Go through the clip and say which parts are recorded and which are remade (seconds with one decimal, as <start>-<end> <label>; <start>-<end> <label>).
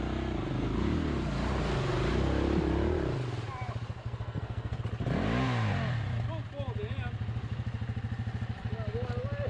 0.0-4.0 recorded; 4.0-4.8 remade; 4.8-9.5 recorded